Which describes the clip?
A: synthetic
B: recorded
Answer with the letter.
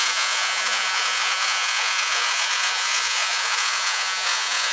A